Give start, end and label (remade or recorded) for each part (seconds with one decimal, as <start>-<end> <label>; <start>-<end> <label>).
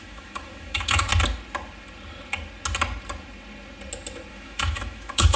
0.0-1.1 remade; 1.1-4.3 recorded; 4.3-5.4 remade